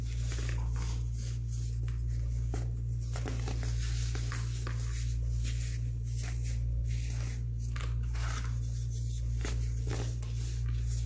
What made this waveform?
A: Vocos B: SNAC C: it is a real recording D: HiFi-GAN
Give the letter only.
C